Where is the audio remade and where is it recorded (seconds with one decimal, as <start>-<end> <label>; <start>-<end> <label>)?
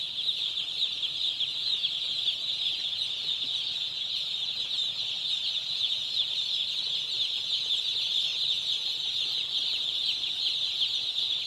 0.0-11.5 recorded